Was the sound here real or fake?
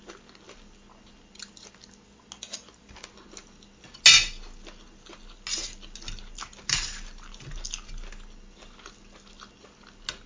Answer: real